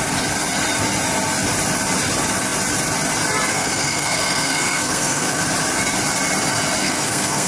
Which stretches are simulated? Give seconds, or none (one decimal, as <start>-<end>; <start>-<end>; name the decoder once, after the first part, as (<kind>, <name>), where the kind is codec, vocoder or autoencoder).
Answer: 3.5-5.4 (codec, SNAC); 6.8-7.5